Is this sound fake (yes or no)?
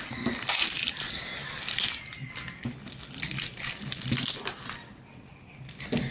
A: no